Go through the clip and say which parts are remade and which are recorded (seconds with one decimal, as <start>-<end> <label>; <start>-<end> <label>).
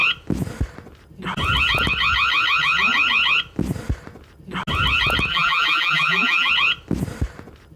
0.0-5.3 recorded; 5.3-6.5 remade; 6.5-7.8 recorded